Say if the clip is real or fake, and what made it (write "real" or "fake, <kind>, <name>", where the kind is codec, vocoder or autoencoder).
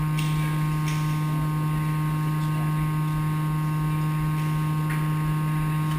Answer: real